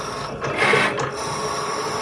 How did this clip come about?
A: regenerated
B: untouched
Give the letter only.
B